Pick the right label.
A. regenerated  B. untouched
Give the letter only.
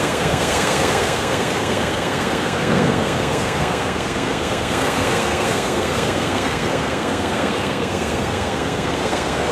A